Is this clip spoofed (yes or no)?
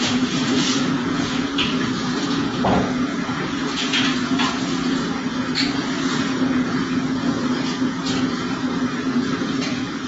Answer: yes